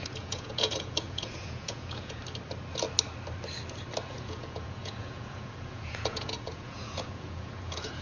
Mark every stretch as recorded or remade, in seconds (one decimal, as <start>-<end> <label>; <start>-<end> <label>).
0.0-2.2 remade; 2.2-4.1 recorded; 4.1-8.0 remade